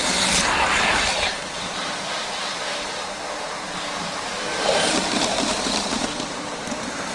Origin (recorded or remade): remade